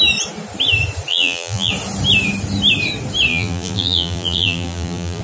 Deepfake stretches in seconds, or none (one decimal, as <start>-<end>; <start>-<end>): 1.1-1.7; 3.3-5.2